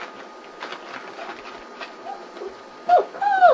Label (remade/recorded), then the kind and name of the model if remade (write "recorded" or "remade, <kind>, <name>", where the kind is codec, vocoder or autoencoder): recorded